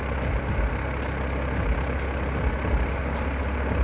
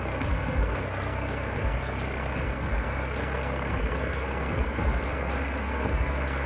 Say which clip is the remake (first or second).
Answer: second